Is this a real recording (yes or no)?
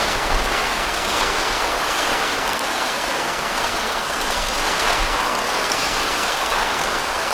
no